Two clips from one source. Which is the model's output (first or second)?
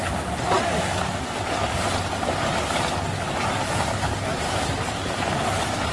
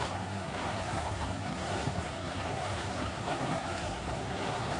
second